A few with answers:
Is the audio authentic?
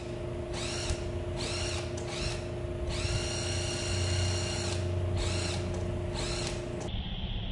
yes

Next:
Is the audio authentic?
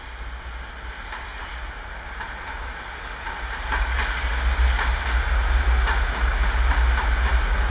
yes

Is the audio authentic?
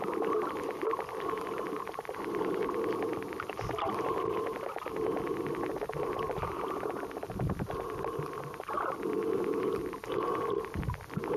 yes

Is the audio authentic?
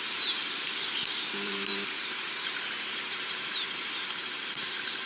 no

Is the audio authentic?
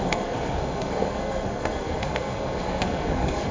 no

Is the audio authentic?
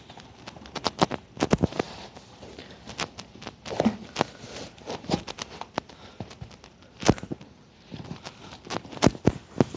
yes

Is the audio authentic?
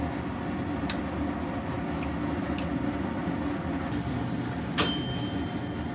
yes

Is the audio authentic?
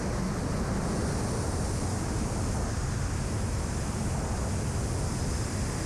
yes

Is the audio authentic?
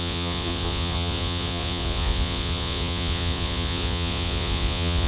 no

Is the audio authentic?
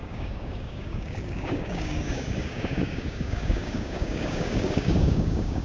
no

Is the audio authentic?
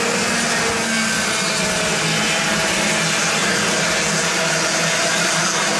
yes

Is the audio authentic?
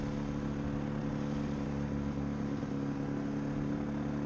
yes